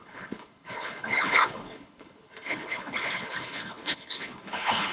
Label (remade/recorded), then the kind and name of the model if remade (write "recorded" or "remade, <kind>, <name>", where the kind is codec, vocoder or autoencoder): remade, codec, HILCodec